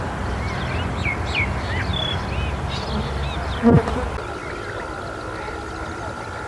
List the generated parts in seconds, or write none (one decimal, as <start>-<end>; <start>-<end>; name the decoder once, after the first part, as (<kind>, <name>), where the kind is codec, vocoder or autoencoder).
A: 0.0-1.9 (vocoder, BigVGAN v2); 5.5-6.5